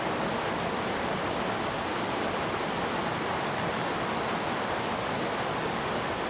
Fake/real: real